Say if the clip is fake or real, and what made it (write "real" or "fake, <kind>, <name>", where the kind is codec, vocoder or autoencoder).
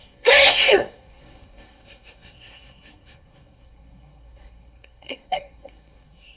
fake, codec, SNAC